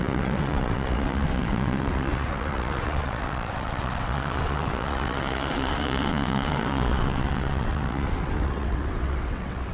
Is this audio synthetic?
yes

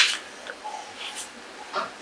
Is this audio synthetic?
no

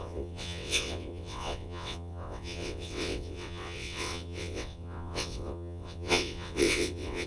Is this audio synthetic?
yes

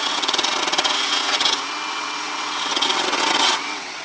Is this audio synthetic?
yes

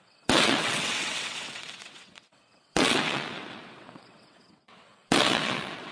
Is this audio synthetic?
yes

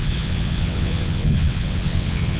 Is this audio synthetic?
yes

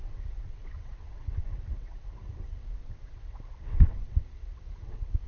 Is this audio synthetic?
yes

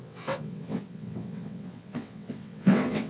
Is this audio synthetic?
yes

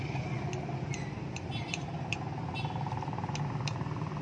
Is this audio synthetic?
no